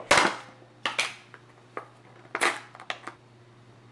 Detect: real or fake real